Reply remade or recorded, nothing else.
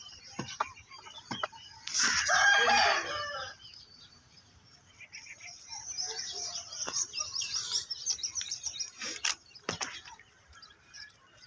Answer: remade